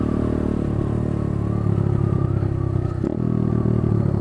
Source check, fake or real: real